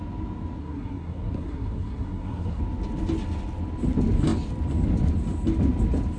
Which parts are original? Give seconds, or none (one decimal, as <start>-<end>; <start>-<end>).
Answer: 0.0-0.6; 2.6-6.2